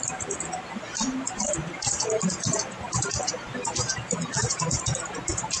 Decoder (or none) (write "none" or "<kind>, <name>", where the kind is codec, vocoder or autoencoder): vocoder, BigVGAN v2